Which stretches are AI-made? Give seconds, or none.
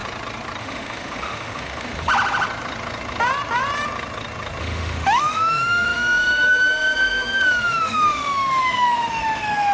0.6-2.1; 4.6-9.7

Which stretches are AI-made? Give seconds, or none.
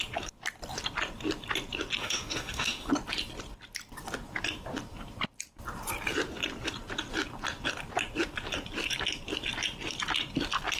2.0-2.9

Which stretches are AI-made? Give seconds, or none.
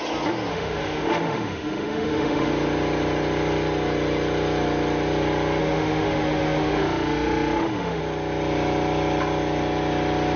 0.5-2.5; 5.6-8.0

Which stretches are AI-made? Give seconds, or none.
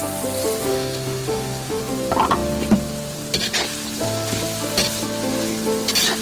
0.7-1.8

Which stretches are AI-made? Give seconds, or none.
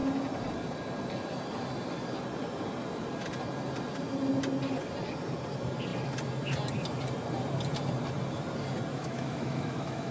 8.9-10.1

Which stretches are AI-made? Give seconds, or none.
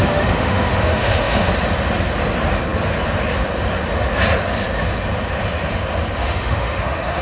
0.0-1.5; 6.2-7.2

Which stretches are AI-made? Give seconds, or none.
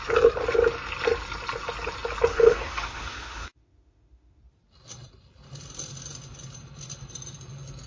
2.3-4.4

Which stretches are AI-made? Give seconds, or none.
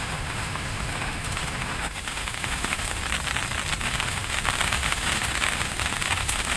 0.0-3.0; 3.8-6.6